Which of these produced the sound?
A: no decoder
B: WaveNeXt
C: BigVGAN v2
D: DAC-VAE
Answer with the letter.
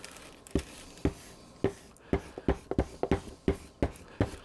A